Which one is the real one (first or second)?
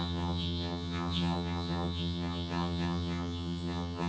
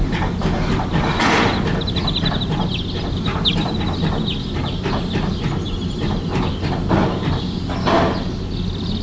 second